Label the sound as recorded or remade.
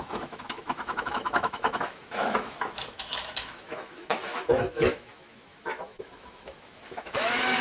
remade